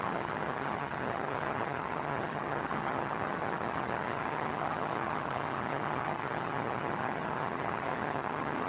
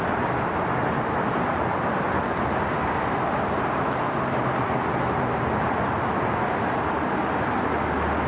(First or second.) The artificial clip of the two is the first